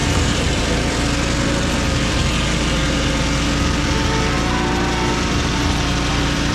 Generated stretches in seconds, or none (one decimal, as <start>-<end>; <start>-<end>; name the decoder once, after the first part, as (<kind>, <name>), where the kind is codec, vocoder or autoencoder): 0.0-2.2 (vocoder, BigVGAN v2); 6.1-6.5